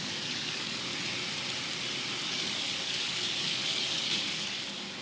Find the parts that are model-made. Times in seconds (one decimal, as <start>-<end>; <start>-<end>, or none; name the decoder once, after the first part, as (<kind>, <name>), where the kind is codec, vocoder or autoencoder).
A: 0.0-0.9 (codec, DAC); 2.2-5.0